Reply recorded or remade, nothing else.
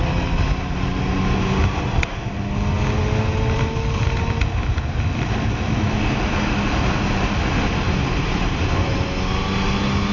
recorded